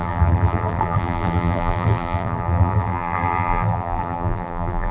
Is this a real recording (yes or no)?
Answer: no